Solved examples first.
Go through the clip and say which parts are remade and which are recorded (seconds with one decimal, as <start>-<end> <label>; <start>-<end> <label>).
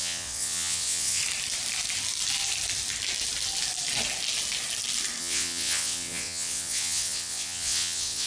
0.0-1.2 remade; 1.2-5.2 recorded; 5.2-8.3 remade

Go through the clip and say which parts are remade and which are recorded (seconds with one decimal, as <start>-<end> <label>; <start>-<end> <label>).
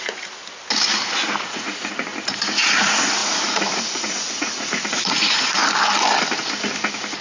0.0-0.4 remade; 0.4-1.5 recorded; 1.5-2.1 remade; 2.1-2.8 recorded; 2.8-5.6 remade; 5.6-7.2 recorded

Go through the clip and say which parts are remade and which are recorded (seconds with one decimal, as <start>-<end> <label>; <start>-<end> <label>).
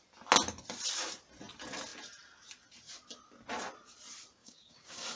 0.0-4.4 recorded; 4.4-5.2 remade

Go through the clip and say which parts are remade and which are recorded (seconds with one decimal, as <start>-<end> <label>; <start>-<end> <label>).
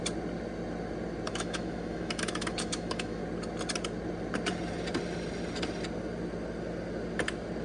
0.0-1.3 recorded; 1.3-3.2 remade; 3.2-7.6 recorded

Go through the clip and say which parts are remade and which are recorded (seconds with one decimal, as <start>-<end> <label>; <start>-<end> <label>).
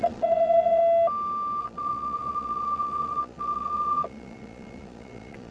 0.0-0.8 remade; 0.8-1.6 recorded; 1.6-5.5 remade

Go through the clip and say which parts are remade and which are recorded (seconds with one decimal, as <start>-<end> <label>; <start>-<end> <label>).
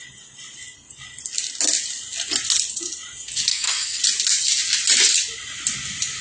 0.0-3.5 recorded; 3.5-4.0 remade; 4.0-6.2 recorded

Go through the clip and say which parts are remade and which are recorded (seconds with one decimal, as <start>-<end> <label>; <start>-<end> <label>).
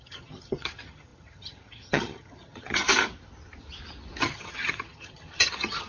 0.0-2.9 remade; 2.9-4.2 recorded; 4.2-5.9 remade